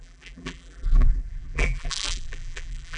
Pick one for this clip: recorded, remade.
remade